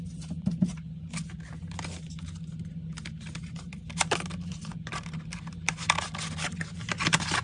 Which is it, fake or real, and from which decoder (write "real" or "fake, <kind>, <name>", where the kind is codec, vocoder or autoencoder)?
real